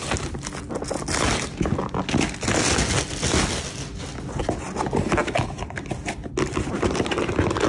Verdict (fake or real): real